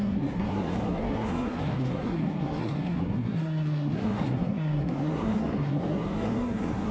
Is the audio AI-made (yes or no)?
yes